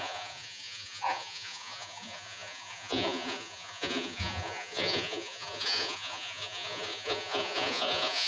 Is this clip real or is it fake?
fake